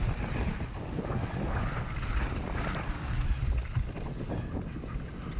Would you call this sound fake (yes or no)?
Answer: no